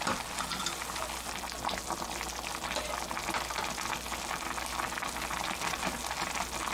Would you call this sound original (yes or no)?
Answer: yes